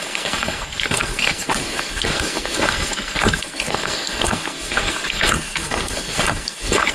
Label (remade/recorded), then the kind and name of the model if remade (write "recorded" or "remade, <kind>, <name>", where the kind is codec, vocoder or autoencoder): remade, codec, SNAC